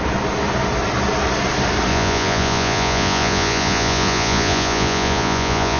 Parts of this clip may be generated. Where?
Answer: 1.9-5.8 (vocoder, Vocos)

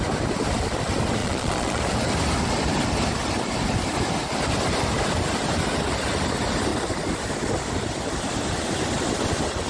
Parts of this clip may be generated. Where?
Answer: 1.2-1.8 (vocoder, Vocos)

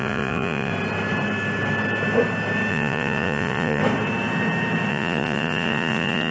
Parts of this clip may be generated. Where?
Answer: 0.0-0.7 (vocoder, Vocos); 2.7-3.8; 4.9-6.3